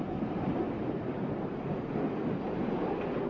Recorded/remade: recorded